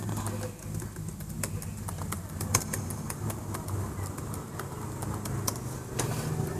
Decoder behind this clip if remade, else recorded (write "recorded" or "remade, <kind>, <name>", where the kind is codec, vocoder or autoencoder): remade, vocoder, BigVGAN v2